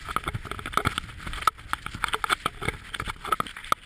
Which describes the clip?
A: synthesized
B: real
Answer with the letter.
B